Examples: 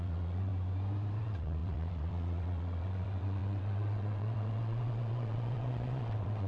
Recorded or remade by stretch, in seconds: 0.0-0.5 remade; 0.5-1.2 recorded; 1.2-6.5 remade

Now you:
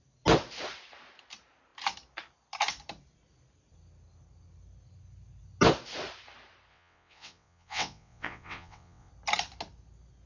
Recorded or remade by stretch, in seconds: 0.0-6.7 recorded; 6.7-9.1 remade; 9.1-10.3 recorded

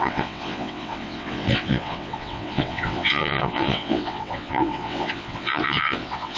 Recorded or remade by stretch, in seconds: 0.0-6.4 remade

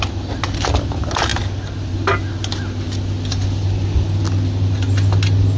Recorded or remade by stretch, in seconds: 0.0-5.6 recorded

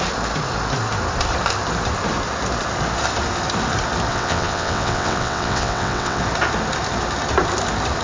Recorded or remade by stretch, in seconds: 0.0-4.1 recorded; 4.1-6.2 remade; 6.2-8.0 recorded

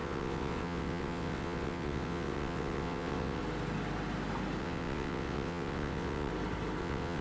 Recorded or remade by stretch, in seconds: 0.0-3.4 remade; 3.4-4.6 recorded; 4.6-6.3 remade; 6.3-6.8 recorded; 6.8-7.2 remade